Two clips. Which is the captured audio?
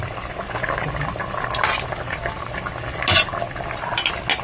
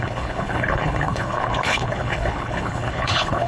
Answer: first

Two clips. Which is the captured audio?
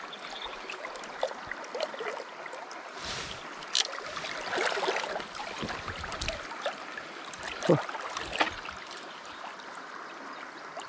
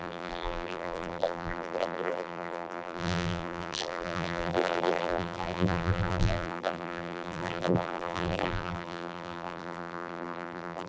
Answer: first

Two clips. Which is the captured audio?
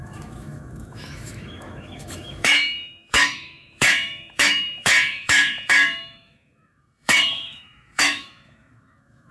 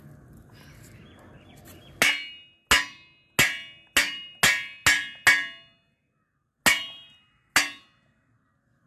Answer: second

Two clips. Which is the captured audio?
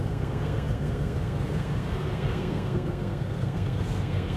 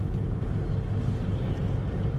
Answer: second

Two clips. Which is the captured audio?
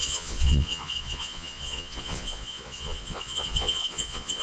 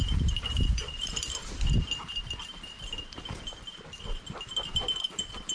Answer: second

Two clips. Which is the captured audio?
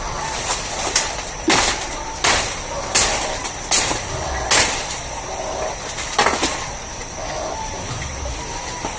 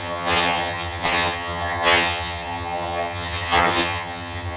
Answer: first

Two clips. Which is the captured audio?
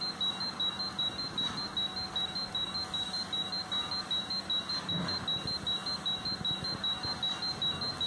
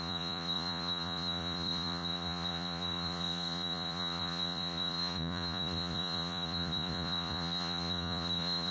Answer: first